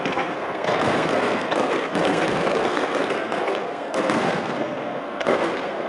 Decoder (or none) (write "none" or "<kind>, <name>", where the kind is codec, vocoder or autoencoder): codec, SNAC